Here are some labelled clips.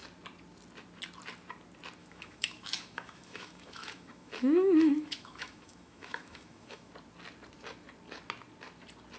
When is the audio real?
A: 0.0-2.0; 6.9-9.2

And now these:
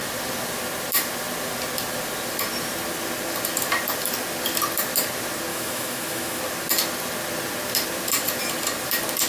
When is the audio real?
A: 0.0-5.5; 6.4-9.3